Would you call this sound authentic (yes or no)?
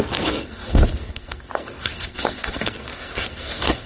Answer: no